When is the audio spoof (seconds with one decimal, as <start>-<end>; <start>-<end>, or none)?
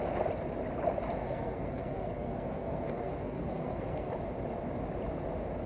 1.2-4.1